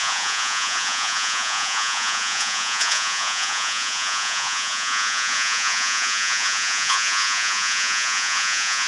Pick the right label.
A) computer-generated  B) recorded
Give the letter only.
A